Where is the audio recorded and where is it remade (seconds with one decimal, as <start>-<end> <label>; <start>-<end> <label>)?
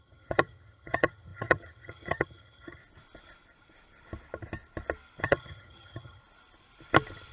0.0-2.8 remade; 2.8-5.2 recorded; 5.2-6.2 remade; 6.2-7.3 recorded